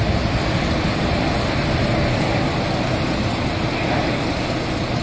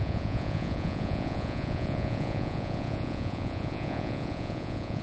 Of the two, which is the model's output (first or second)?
second